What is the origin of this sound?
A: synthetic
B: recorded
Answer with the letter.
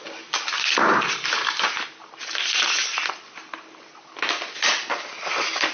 B